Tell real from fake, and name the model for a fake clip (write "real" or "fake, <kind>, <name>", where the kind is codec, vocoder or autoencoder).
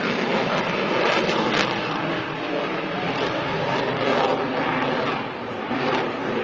real